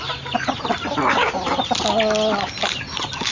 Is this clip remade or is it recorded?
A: recorded